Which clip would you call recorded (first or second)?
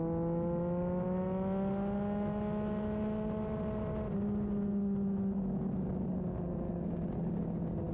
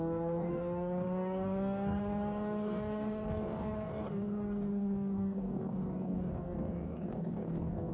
first